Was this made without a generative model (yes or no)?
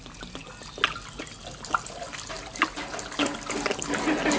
yes